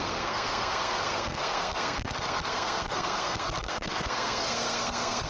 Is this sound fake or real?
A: fake